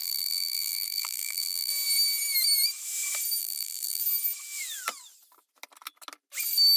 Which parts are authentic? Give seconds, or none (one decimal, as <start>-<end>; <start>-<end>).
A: 1.7-3.4; 4.0-6.8